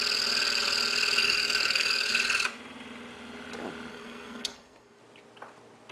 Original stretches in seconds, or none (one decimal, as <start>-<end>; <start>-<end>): 0.0-1.2; 2.1-3.9; 5.0-5.9